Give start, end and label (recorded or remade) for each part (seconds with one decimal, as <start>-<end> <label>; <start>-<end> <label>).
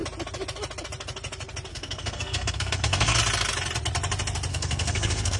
0.0-1.7 recorded; 1.7-3.2 remade; 3.2-4.5 recorded; 4.5-5.4 remade